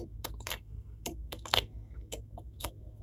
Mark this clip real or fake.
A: fake